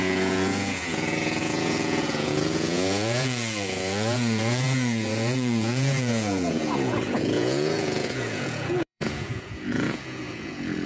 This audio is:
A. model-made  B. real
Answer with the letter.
A